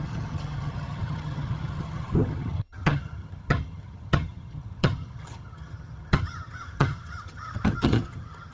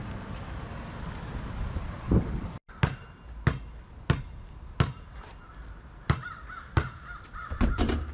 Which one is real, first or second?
second